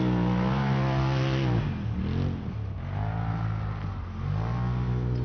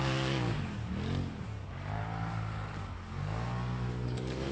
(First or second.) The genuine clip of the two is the first